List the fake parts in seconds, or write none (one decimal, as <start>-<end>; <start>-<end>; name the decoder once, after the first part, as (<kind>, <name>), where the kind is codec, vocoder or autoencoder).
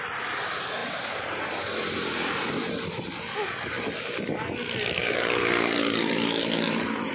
0.8-1.4 (vocoder, BigVGAN v2); 5.0-7.1